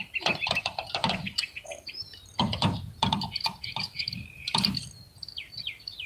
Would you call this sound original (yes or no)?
no